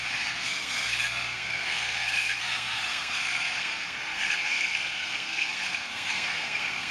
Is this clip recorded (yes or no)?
no